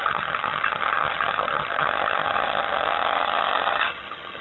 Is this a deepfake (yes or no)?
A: yes